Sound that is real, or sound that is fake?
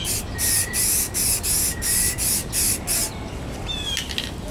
real